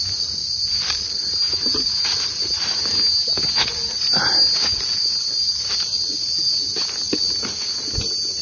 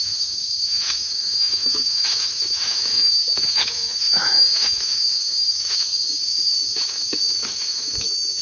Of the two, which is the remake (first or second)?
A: second